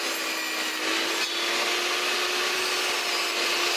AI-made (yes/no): no